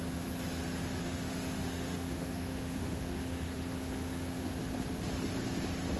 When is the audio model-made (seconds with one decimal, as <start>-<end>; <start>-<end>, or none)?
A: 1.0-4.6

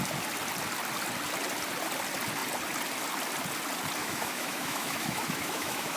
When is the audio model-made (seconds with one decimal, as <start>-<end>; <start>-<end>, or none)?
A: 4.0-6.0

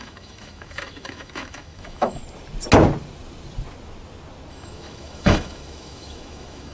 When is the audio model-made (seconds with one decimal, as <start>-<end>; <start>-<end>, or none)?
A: 0.0-2.2; 4.5-6.7

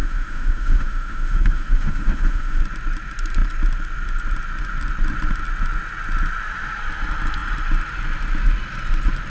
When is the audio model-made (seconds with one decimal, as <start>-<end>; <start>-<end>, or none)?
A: 0.0-2.6

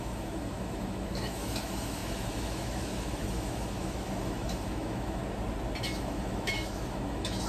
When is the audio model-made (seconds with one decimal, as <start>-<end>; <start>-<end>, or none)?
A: 0.0-5.2; 5.8-7.5